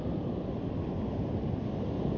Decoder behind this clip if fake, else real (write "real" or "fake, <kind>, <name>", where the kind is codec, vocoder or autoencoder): real